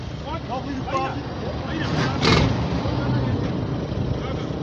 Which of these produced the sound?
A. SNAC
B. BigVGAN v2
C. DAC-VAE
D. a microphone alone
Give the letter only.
D